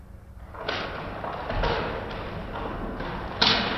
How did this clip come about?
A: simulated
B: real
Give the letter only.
B